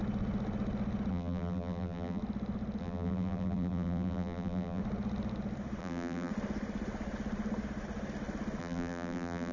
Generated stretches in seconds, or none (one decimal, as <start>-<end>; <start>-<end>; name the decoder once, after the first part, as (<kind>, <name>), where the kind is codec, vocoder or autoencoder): 1.1-2.2 (vocoder, BigVGAN v2); 2.8-4.8; 5.8-6.3; 8.6-9.5